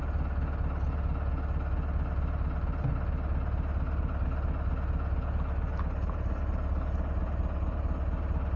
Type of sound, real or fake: real